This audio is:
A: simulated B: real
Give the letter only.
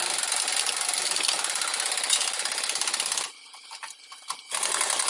B